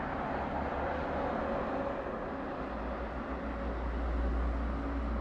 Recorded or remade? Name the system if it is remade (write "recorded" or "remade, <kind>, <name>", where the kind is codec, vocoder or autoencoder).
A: recorded